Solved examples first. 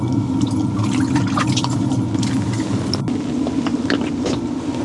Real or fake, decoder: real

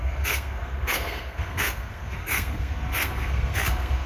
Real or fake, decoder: fake, codec, SNAC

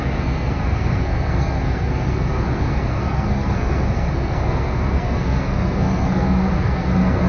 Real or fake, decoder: fake, codec, SNAC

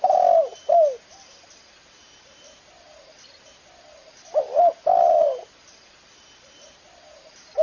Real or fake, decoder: real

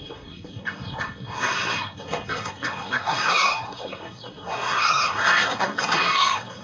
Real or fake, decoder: fake, codec, SNAC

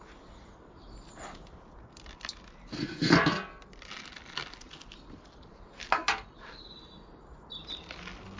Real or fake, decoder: real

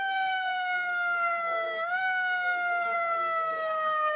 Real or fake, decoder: fake, codec, SNAC